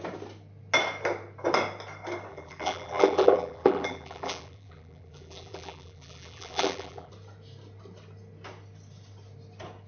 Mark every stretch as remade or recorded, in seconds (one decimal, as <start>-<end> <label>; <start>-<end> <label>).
0.0-2.3 recorded; 2.3-7.1 remade; 7.1-9.9 recorded